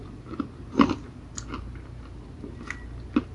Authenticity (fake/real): real